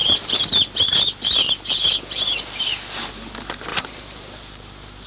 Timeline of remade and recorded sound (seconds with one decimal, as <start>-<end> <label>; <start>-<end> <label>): 0.0-3.7 recorded; 3.7-5.1 remade